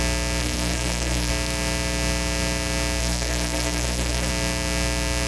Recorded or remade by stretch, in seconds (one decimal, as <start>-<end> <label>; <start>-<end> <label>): 0.0-0.4 recorded; 0.4-1.3 remade; 1.3-3.0 recorded; 3.0-4.3 remade; 4.3-5.3 recorded